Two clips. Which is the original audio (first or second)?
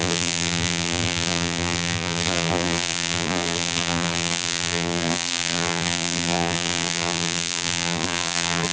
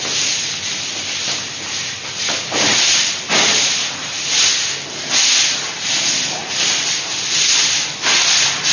second